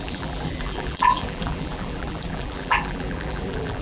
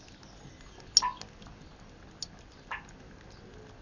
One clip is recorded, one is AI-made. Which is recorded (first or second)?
second